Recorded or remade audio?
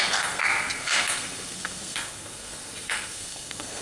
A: remade